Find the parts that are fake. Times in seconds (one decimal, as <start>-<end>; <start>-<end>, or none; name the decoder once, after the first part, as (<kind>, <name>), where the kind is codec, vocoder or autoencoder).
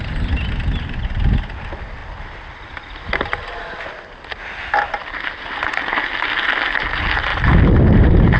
none